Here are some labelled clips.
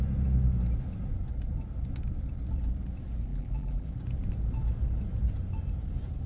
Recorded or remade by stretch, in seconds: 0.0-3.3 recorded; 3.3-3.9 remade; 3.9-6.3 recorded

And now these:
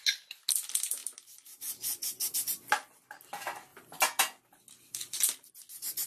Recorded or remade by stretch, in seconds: 0.0-6.1 recorded